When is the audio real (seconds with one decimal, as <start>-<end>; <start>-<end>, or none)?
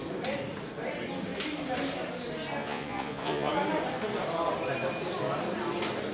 0.0-2.6; 3.5-6.1